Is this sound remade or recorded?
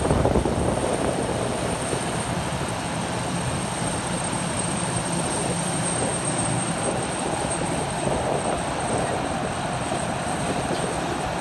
remade